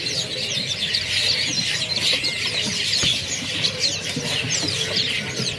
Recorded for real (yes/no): no